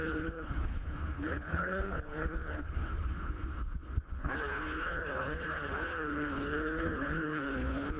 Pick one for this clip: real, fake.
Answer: fake